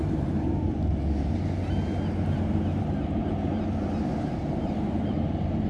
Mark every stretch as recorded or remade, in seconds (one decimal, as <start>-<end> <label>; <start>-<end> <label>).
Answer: 0.0-0.9 remade; 0.9-2.5 recorded; 2.5-3.3 remade; 3.3-4.1 recorded; 4.1-5.7 remade